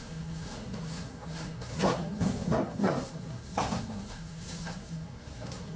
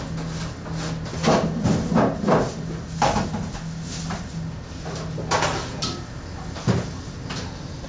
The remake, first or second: first